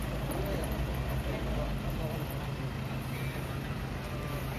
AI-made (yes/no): no